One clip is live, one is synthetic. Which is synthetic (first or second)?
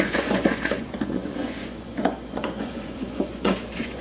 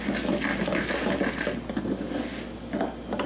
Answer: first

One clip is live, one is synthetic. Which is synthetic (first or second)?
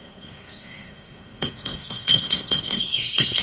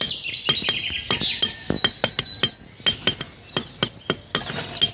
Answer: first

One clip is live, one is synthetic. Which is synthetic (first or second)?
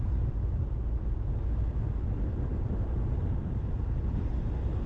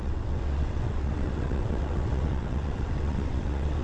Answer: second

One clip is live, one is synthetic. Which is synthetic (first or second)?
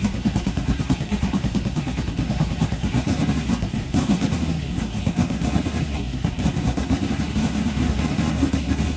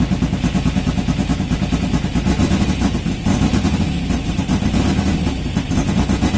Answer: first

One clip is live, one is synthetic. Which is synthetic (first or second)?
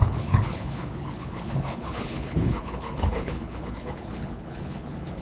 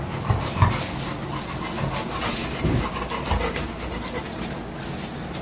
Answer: first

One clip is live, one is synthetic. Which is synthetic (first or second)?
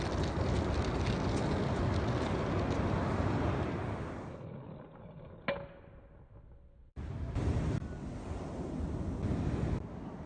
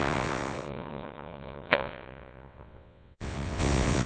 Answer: second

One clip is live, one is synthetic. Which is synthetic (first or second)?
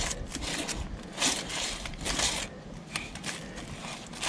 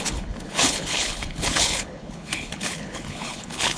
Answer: second